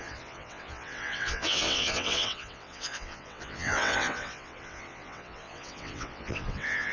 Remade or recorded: remade